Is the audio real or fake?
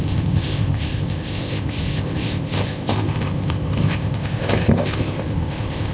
fake